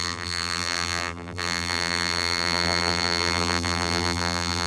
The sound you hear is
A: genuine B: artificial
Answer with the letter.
B